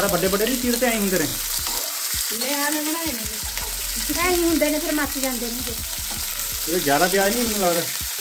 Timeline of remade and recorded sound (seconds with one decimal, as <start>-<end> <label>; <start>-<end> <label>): 0.0-1.3 recorded; 1.3-3.9 remade; 3.9-5.8 recorded; 5.8-6.3 remade; 6.3-6.7 recorded; 6.7-8.2 remade